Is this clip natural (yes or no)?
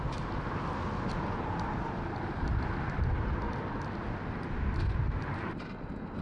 yes